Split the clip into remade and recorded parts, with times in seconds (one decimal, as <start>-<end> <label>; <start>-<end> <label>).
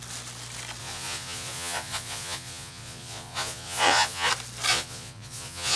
0.0-0.8 recorded; 0.8-4.3 remade; 4.3-4.7 recorded; 4.7-5.8 remade